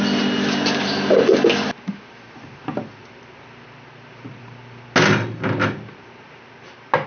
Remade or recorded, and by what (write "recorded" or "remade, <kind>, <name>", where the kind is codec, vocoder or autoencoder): recorded